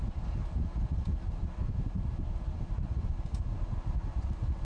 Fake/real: real